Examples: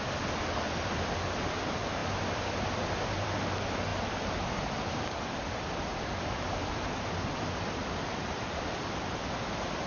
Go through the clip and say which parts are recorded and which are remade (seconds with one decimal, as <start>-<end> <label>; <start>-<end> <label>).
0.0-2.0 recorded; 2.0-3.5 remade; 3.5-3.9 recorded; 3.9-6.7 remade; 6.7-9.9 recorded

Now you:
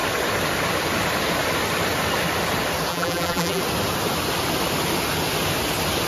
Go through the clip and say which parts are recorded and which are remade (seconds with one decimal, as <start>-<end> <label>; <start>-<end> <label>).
0.0-2.9 recorded; 2.9-3.6 remade; 3.6-6.1 recorded

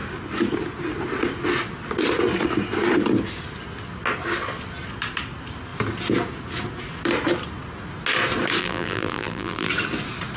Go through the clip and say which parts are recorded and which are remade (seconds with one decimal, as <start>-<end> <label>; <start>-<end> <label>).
0.0-8.6 recorded; 8.6-9.7 remade; 9.7-10.4 recorded